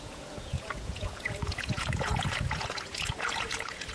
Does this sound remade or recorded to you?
remade